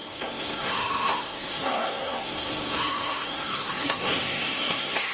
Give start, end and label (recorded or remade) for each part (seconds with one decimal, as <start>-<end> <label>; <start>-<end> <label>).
0.0-5.1 remade